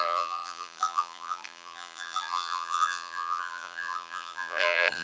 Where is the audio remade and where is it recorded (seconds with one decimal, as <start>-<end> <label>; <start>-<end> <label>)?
0.0-5.0 remade